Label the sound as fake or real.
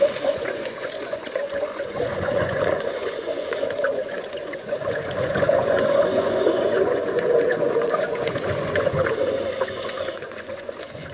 fake